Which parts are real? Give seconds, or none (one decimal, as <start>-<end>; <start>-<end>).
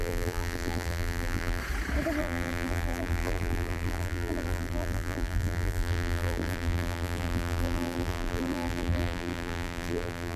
1.6-2.2